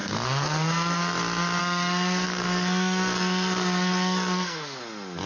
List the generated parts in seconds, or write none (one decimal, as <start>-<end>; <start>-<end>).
0.0-1.0; 1.6-4.8